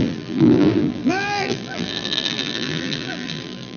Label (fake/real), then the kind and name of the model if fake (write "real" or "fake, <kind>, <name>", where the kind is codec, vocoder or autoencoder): fake, vocoder, BigVGAN v2